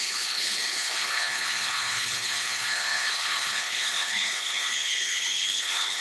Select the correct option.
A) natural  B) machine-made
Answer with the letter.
B